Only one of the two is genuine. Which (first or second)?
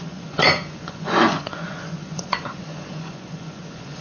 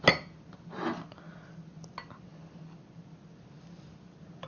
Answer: second